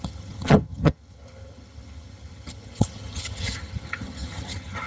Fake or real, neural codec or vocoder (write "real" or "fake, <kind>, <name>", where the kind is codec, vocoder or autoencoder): fake, vocoder, HiFi-GAN